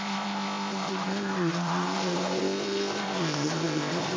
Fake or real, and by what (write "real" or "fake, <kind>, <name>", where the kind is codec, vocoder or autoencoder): fake, codec, ZipCodec